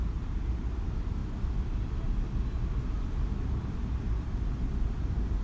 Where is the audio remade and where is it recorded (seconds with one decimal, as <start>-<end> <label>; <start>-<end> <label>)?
0.0-5.4 recorded